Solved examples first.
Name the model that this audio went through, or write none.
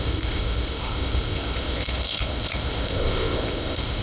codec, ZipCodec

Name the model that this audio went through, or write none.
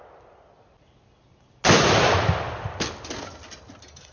none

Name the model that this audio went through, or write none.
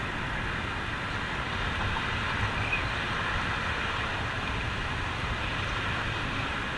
none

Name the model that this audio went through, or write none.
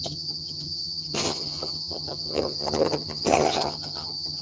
vocoder, HiFi-GAN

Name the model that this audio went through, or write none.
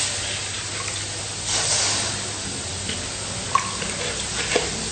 none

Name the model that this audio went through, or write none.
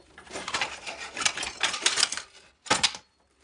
none